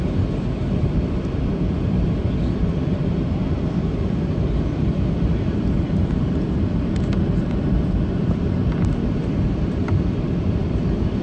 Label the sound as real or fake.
fake